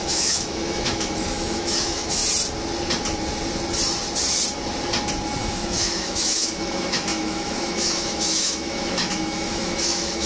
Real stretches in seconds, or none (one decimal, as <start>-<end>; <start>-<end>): 2.2-5.4